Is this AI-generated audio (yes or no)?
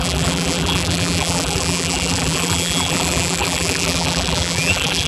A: yes